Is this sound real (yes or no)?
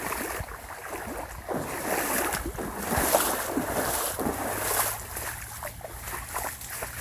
yes